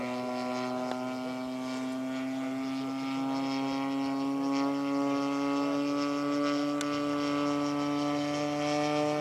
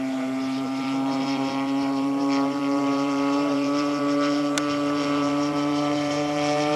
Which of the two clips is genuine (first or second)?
first